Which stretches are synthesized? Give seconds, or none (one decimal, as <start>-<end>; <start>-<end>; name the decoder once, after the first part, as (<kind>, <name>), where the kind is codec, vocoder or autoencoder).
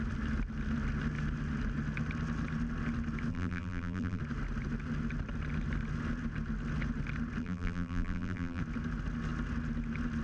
3.3-4.2 (vocoder, BigVGAN v2); 7.4-8.6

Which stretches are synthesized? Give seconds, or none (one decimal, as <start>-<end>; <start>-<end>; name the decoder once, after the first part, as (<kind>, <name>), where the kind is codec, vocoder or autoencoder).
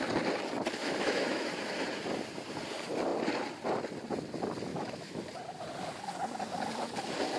0.8-1.5 (autoencoder, DAC-VAE); 4.7-5.2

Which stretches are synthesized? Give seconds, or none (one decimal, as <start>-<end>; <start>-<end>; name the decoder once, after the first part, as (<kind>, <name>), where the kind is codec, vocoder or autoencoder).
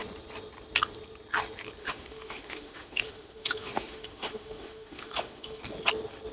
1.8-5.6 (autoencoder, DAC-VAE)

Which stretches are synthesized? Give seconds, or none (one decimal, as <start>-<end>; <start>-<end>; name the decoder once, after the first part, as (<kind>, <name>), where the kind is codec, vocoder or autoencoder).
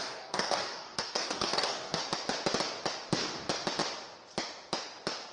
0.0-2.0 (codec, DAC)